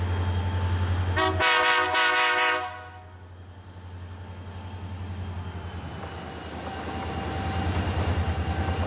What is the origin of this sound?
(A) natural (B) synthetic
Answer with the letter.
A